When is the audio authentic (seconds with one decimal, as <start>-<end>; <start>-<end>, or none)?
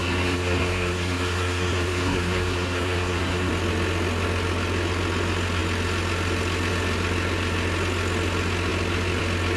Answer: 3.5-9.6